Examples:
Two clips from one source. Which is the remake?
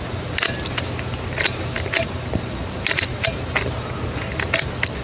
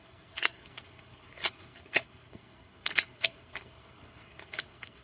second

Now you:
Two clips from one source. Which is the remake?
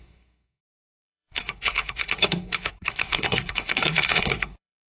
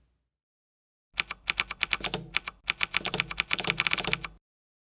first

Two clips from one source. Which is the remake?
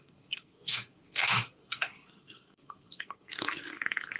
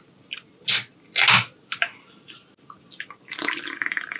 first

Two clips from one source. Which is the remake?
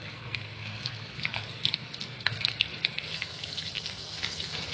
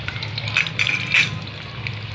first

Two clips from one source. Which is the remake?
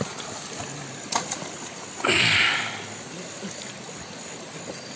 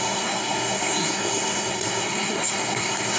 second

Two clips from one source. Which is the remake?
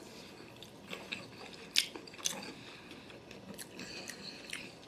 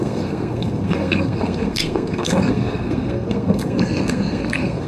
second